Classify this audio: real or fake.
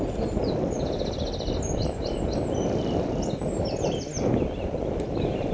real